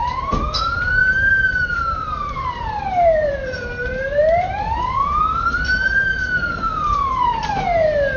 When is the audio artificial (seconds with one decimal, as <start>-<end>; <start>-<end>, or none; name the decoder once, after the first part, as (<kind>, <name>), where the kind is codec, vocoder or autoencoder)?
1.0-5.6 (vocoder, BigVGAN v2); 6.2-7.6